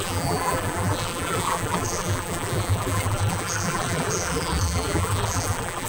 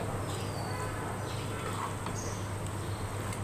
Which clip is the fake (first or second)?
first